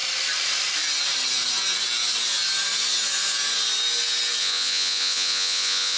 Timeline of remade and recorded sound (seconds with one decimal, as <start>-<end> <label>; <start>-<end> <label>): 0.0-4.4 recorded; 4.4-6.0 remade

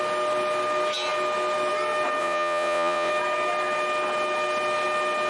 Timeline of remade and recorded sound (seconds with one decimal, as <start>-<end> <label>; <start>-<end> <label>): 0.0-2.2 recorded; 2.2-3.1 remade; 3.1-5.3 recorded

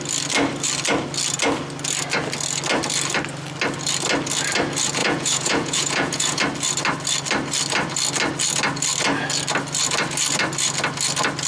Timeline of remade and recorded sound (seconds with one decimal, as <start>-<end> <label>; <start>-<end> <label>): 0.0-5.0 recorded; 5.0-6.4 remade; 6.4-11.5 recorded